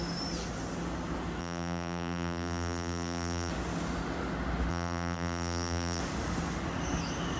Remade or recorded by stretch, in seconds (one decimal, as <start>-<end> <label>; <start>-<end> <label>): 0.0-1.4 recorded; 1.4-3.5 remade; 3.5-4.7 recorded; 4.7-6.0 remade; 6.0-7.4 recorded